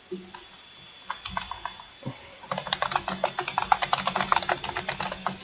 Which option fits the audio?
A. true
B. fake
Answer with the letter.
A